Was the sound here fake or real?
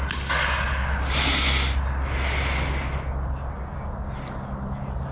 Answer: real